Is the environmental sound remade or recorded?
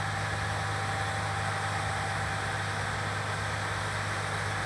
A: recorded